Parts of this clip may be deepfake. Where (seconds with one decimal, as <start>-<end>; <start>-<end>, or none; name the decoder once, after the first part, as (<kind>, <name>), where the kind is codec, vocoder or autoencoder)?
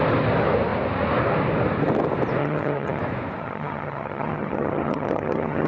2.4-3.0 (vocoder, HiFi-GAN); 3.4-5.7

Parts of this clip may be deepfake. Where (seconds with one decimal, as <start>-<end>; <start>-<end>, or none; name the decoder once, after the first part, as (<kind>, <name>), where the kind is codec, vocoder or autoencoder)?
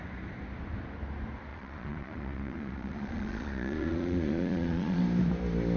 1.5-5.0 (vocoder, Vocos)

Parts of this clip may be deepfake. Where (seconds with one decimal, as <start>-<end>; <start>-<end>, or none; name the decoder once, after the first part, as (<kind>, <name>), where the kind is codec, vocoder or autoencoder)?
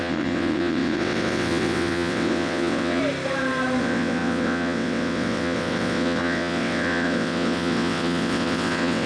0.0-3.0 (vocoder, WaveNeXt); 3.8-9.1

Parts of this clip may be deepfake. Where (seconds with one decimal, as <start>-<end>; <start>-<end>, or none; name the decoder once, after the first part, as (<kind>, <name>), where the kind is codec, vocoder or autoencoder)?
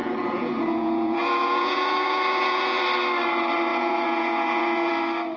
0.0-2.8 (vocoder, Vocos); 3.7-4.9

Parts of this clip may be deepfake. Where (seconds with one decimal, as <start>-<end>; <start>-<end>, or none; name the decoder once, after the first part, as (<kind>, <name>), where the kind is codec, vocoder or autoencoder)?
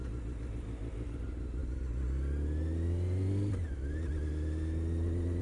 none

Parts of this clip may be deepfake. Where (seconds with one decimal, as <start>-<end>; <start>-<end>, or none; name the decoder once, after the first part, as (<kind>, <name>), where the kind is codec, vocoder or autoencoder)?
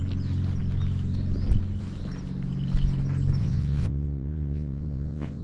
3.4-5.4 (vocoder, Vocos)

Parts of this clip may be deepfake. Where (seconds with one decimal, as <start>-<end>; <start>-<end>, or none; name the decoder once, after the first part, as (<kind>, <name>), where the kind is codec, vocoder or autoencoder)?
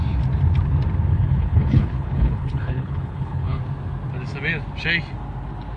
1.1-3.6 (codec, HILCodec)